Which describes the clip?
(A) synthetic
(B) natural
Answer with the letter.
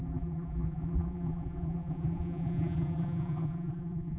A